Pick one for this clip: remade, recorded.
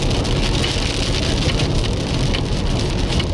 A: recorded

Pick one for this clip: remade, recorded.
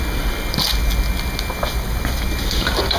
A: recorded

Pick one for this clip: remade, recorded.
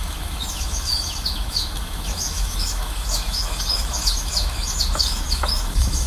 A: remade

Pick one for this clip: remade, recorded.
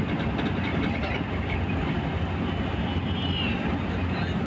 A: recorded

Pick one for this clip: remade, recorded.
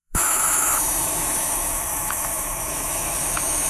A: remade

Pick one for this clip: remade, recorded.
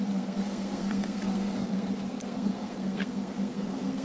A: remade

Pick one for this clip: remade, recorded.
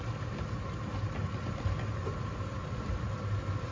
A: recorded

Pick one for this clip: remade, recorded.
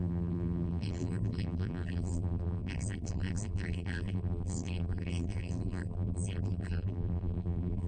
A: remade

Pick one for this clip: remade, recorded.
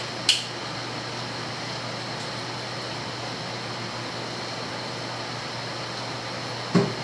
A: recorded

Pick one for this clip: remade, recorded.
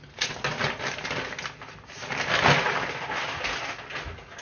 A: recorded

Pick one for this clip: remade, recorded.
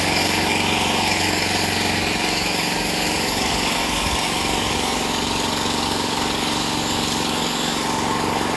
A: remade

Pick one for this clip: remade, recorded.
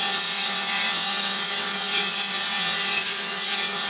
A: remade